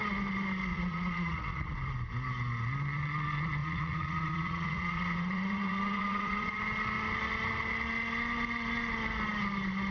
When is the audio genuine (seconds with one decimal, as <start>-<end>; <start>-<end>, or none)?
0.0-0.7; 1.7-3.6; 6.6-9.9